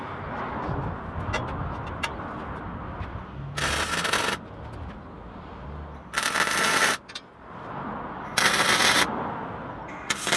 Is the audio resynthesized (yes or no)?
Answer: no